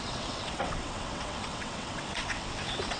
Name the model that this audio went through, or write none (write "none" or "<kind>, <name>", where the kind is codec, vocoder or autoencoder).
vocoder, WaveNeXt